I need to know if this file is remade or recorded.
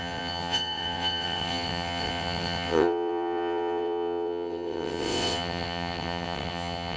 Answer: remade